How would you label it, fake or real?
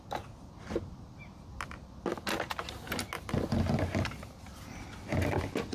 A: real